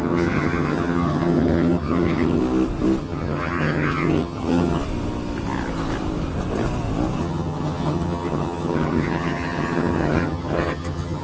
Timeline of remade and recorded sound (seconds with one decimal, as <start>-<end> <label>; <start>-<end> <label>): 0.0-2.4 remade; 2.4-3.0 recorded; 3.0-4.8 remade; 4.8-7.2 recorded; 7.2-11.2 remade